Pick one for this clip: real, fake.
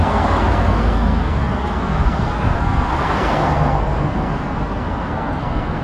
fake